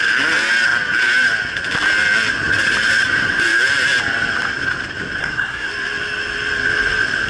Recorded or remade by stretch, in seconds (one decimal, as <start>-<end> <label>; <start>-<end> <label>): 0.0-5.2 recorded; 5.2-5.7 remade; 5.7-7.3 recorded